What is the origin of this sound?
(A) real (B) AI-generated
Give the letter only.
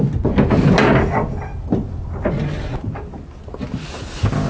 A